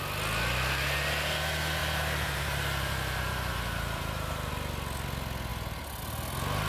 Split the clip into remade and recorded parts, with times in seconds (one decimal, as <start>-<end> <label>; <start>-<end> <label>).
0.0-1.8 recorded; 1.8-4.5 remade; 4.5-6.7 recorded